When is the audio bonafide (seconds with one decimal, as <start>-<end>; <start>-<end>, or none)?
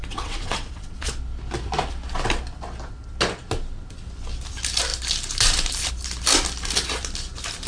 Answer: 1.1-7.7